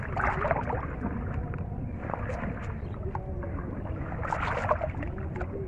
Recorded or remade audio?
recorded